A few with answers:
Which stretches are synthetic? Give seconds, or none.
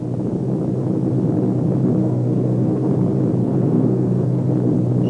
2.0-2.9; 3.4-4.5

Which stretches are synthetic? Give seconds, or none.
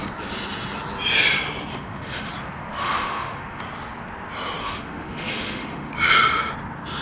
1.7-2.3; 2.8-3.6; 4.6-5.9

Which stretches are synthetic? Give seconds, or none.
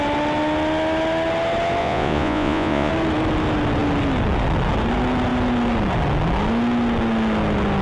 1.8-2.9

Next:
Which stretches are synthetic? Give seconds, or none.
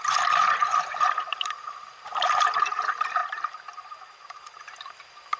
0.4-2.8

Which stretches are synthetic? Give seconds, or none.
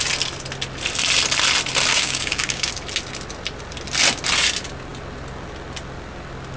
1.9-2.7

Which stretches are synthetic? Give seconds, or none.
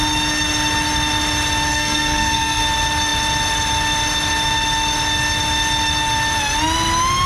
1.7-2.6